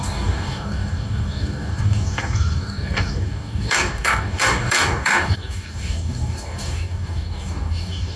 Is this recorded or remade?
remade